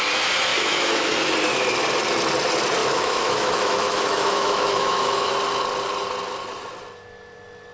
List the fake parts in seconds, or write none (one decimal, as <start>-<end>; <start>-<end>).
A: 0.5-1.1; 2.8-5.3